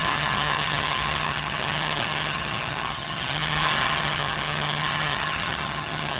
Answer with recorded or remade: remade